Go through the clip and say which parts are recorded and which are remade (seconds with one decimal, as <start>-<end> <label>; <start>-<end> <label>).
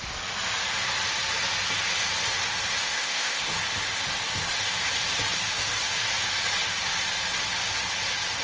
0.0-2.8 recorded; 2.8-3.5 remade; 3.5-8.4 recorded